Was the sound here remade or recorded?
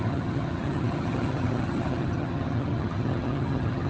remade